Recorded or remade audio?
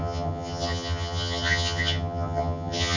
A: remade